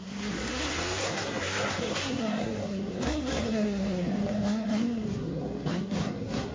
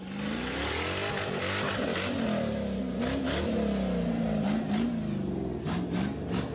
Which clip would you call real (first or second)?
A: second